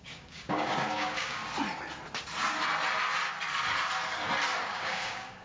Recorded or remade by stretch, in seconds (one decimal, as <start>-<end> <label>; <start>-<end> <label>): 0.0-1.4 remade; 1.4-4.6 recorded; 4.6-5.4 remade